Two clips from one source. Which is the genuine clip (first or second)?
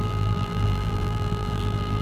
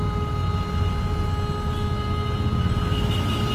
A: second